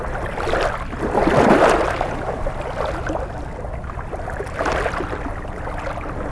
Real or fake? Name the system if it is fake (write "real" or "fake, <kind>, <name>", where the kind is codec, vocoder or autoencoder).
real